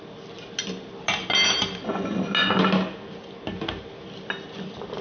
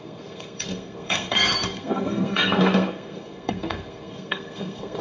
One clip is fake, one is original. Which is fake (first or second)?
second